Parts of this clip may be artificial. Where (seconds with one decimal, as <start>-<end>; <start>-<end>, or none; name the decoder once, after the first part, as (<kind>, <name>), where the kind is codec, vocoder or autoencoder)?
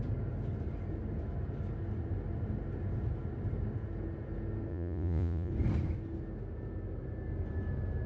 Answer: 4.7-5.5 (vocoder, Vocos)